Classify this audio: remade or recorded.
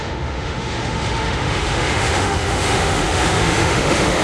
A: remade